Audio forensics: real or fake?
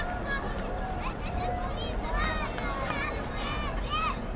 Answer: real